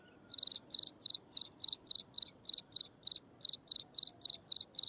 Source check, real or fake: real